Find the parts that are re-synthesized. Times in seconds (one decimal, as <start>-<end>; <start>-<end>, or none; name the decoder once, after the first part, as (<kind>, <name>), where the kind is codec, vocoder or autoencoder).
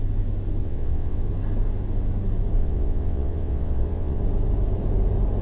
0.6-1.3 (vocoder, WaveNeXt); 2.6-4.2